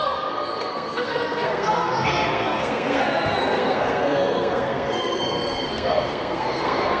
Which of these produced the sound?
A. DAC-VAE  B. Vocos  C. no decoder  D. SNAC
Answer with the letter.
D